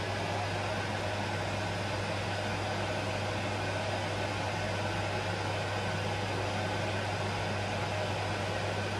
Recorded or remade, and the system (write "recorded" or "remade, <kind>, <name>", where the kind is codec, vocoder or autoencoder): recorded